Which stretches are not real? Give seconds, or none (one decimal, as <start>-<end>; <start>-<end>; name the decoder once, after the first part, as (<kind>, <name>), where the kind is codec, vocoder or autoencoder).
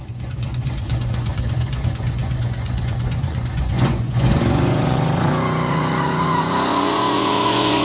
0.0-7.8 (vocoder, Vocos)